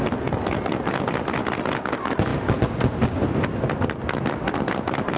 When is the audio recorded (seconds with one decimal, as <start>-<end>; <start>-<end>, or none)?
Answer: 0.0-5.2